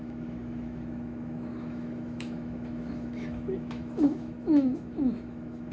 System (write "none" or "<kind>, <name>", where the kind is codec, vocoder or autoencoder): autoencoder, DAC-VAE